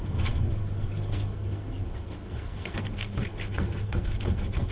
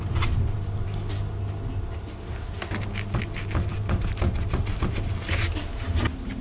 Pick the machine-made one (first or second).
first